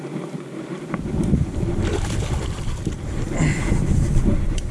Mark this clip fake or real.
real